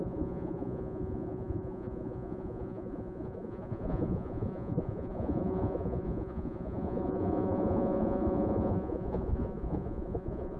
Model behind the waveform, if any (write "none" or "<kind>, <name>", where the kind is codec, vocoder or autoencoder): vocoder, Vocos